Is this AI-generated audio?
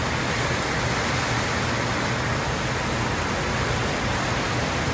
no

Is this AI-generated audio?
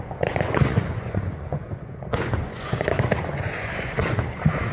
yes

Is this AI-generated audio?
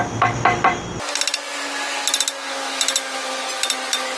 no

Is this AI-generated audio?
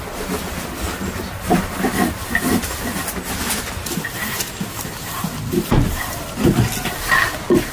no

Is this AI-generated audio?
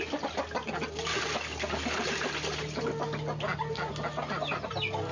no